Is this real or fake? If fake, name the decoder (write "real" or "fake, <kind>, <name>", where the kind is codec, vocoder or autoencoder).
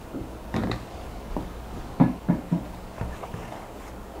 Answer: fake, codec, DAC